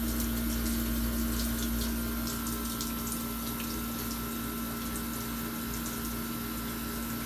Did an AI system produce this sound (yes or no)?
no